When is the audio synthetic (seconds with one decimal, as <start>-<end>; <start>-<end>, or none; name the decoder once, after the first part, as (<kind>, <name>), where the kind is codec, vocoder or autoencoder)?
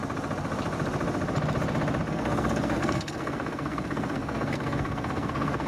2.1-5.7 (codec, SNAC)